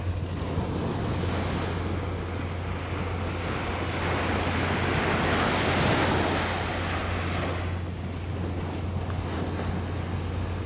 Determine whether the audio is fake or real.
real